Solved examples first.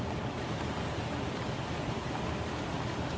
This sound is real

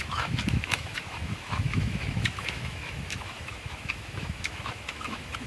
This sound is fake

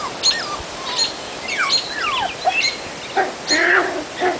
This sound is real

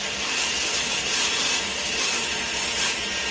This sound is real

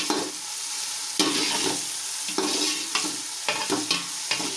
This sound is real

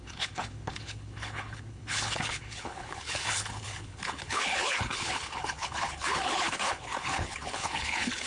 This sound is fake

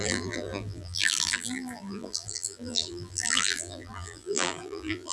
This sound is fake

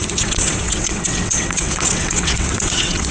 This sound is fake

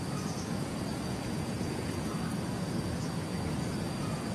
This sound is fake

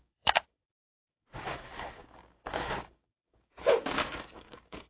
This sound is fake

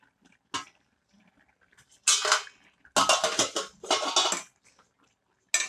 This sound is real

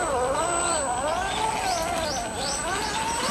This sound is real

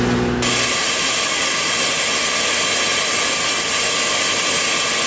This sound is real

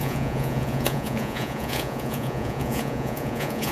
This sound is fake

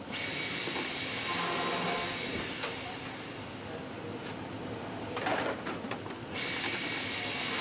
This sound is real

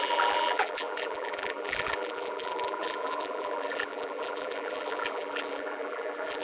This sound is fake